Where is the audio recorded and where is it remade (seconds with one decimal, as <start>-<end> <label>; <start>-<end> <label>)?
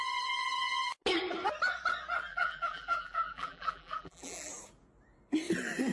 0.0-2.3 recorded; 2.3-4.5 remade; 4.5-5.9 recorded